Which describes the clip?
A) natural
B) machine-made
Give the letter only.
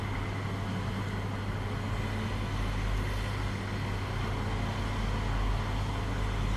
A